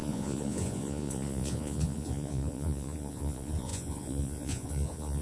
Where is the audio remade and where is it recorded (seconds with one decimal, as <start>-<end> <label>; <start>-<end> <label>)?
0.0-5.2 remade